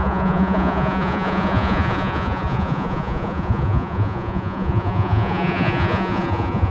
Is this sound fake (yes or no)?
yes